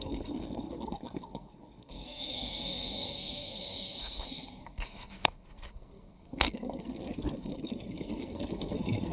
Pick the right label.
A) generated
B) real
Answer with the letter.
A